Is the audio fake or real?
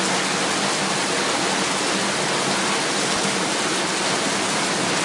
real